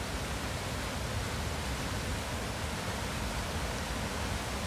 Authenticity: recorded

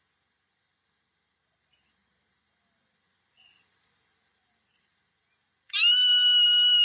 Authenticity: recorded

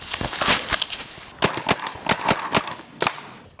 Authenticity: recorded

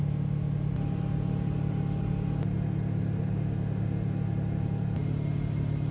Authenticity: recorded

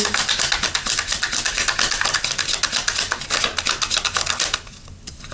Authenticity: recorded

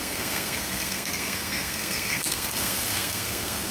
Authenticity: remade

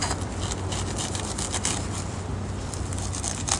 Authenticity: recorded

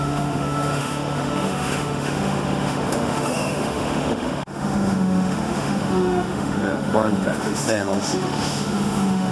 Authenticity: remade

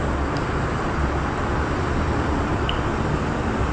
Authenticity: remade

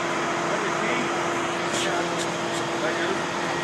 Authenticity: recorded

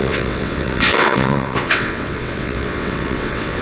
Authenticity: remade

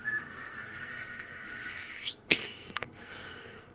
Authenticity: remade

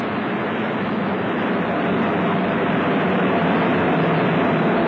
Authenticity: recorded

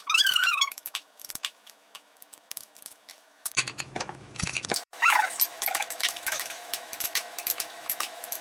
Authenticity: remade